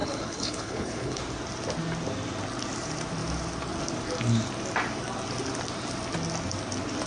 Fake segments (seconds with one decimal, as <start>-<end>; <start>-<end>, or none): 0.0-1.2